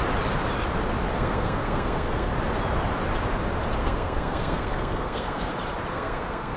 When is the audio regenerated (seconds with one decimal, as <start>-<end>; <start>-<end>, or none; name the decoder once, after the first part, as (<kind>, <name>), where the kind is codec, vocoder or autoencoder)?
1.1-2.3 (codec, SNAC); 3.8-5.5; 5.9-6.6